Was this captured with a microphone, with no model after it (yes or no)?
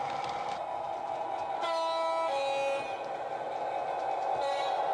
yes